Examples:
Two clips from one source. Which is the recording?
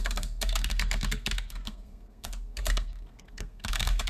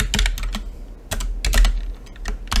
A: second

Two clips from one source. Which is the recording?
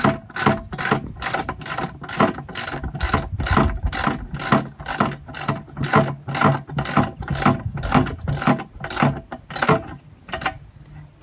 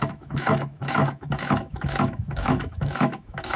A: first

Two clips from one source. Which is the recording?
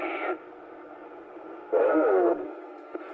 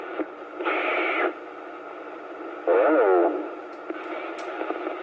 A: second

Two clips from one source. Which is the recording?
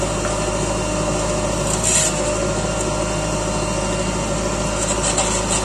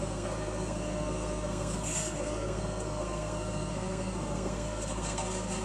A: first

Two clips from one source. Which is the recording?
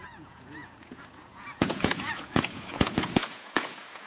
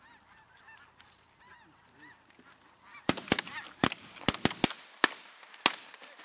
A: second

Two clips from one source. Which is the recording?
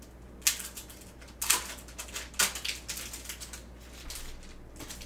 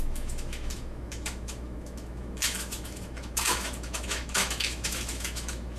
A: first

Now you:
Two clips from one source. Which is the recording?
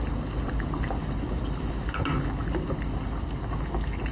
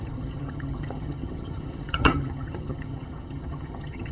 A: first